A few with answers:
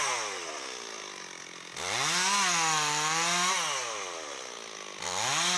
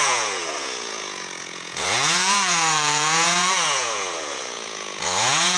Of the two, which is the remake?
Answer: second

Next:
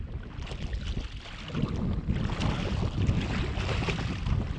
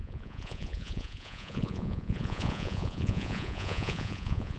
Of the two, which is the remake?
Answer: second